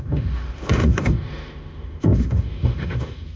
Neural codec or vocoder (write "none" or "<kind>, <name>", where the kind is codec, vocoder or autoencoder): autoencoder, DAC-VAE